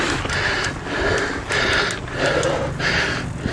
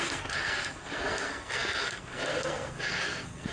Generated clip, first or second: second